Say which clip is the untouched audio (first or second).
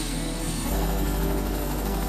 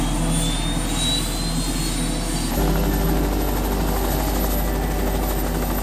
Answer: second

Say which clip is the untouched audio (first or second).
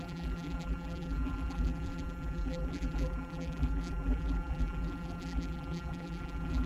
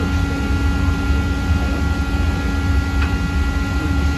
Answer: second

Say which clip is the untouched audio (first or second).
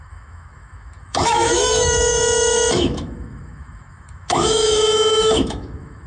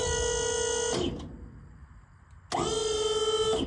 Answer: second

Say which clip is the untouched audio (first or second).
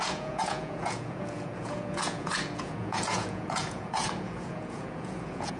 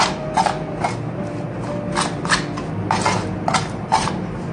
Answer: second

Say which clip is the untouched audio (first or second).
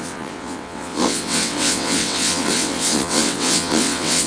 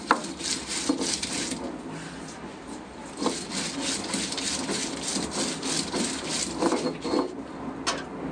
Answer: second